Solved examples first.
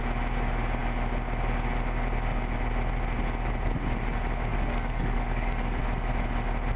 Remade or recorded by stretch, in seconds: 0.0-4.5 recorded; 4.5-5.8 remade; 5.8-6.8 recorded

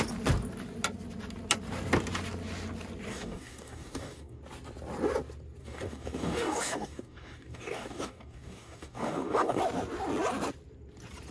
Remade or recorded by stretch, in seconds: 0.0-3.1 recorded; 3.1-4.4 remade; 4.4-5.6 recorded; 5.6-9.6 remade; 9.6-11.3 recorded

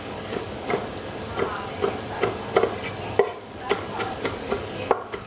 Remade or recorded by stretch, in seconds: 0.0-0.8 remade; 0.8-3.4 recorded; 3.4-5.3 remade

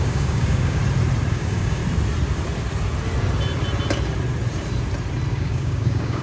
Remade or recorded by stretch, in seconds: 0.0-0.8 remade; 0.8-1.3 recorded; 1.3-1.8 remade; 1.8-5.3 recorded; 5.3-6.2 remade